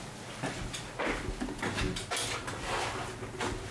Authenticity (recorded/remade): recorded